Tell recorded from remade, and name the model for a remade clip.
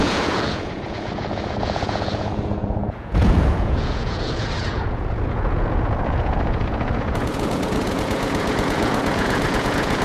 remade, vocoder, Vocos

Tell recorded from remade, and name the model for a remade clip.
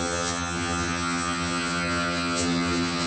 remade, vocoder, HiFi-GAN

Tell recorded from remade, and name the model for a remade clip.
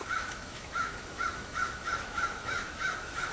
remade, autoencoder, DAC-VAE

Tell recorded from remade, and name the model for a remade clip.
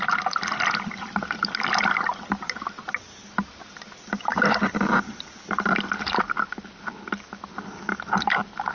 recorded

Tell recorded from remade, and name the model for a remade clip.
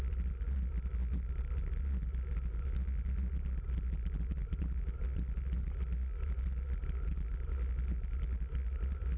recorded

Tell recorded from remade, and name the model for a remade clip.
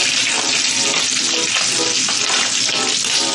recorded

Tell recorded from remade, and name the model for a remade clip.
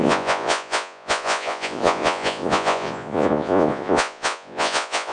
remade, vocoder, Vocos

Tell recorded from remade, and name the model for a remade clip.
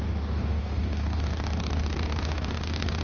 remade, codec, DAC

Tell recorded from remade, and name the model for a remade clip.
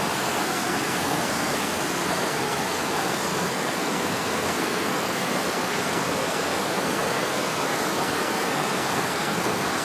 remade, codec, SNAC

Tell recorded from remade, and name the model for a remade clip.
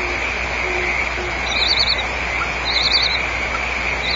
recorded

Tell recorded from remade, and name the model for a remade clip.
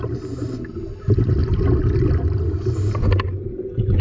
recorded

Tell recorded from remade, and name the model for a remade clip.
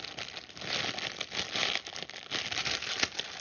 recorded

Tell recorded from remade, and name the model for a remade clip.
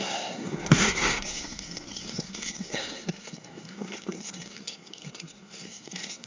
remade, codec, SNAC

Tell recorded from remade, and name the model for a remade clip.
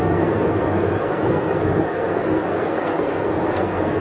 remade, codec, SNAC